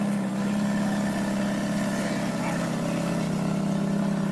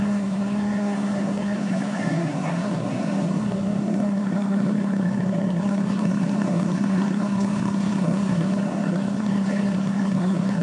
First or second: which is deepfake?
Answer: second